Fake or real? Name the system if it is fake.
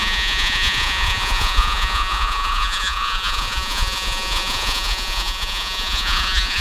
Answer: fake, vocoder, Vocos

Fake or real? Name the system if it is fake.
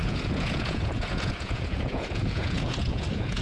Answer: fake, vocoder, Vocos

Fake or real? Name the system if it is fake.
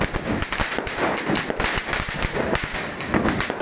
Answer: real